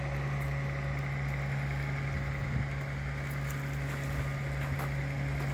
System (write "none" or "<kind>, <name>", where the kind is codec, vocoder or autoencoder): none